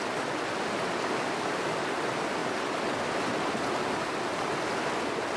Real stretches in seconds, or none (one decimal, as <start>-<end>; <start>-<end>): 0.0-5.4